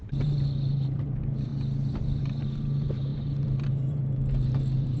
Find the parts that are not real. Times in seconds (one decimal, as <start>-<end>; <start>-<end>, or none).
0.0-1.5; 2.2-5.0